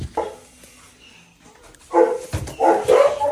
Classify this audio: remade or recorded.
recorded